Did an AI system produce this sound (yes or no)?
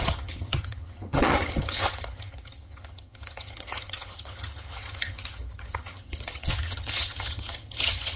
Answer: yes